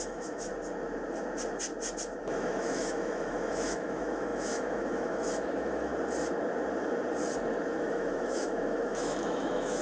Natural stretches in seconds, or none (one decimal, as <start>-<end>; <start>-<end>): 0.5-2.2; 5.9-7.8